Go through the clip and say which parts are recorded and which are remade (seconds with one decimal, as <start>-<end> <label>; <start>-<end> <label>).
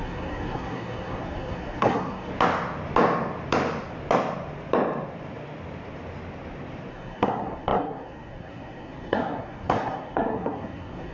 0.0-2.3 remade; 2.3-6.9 recorded; 6.9-11.1 remade